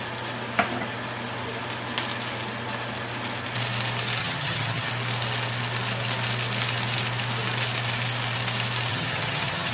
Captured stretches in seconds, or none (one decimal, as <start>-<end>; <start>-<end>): 0.0-4.2; 4.9-8.9

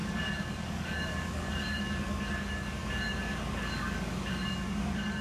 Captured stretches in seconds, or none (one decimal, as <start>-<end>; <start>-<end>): none

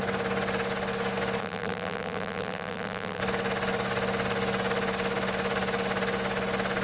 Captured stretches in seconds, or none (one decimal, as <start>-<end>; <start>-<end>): 0.0-1.4; 3.2-6.8

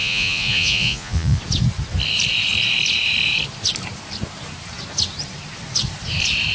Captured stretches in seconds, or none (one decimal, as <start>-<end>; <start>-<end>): 1.4-6.5

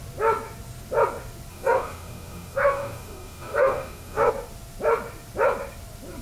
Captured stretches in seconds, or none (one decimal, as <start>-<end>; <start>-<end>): 0.0-1.5; 4.3-6.2

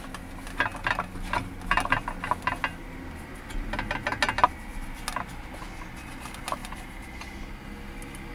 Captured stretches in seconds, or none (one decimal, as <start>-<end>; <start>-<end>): 0.0-6.6; 7.4-8.3

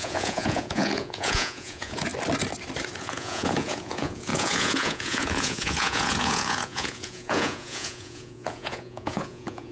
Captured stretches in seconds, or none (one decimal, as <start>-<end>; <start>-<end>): 2.1-3.0

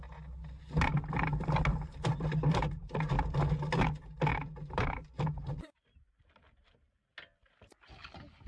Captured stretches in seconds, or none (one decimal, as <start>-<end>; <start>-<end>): 0.0-1.7; 3.1-4.3; 6.2-8.5